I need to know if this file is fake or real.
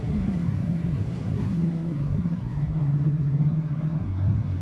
fake